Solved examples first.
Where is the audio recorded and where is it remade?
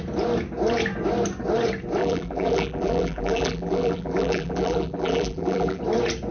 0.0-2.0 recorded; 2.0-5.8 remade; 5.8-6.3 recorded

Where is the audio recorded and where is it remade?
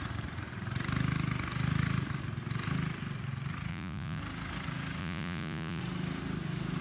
0.0-3.7 recorded; 3.7-4.2 remade; 4.2-5.0 recorded; 5.0-5.8 remade; 5.8-6.8 recorded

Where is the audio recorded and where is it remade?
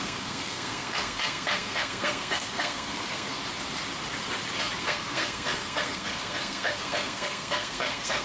0.0-3.4 remade; 3.4-4.8 recorded; 4.8-8.2 remade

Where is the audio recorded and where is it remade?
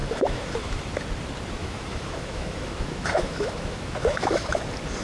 0.0-0.8 remade; 0.8-1.6 recorded; 1.6-4.6 remade; 4.6-5.0 recorded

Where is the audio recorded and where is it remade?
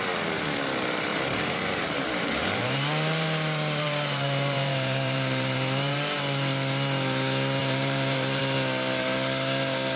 0.0-1.1 recorded; 1.1-6.2 remade; 6.2-7.6 recorded; 7.6-8.4 remade; 8.4-10.0 recorded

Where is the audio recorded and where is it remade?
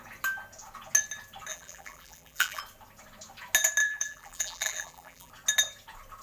0.0-1.5 recorded; 1.5-2.6 remade; 2.6-3.8 recorded; 3.8-5.3 remade; 5.3-6.2 recorded